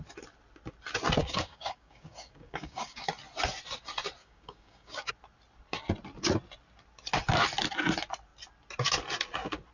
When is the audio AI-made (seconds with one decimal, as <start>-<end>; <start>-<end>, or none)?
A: 1.2-3.1; 4.2-5.1